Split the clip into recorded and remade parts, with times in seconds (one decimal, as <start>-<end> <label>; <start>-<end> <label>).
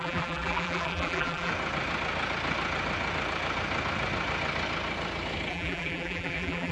0.0-1.5 remade; 1.5-5.5 recorded; 5.5-6.7 remade